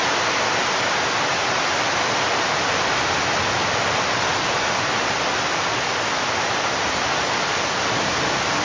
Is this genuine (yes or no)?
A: yes